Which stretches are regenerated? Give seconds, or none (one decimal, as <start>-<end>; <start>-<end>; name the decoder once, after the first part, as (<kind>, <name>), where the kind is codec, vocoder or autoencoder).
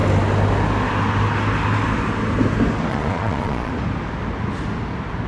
2.9-3.7 (vocoder, Vocos)